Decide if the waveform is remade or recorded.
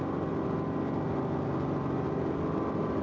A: recorded